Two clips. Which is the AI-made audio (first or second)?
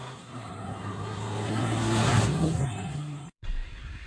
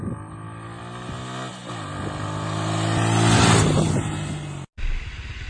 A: first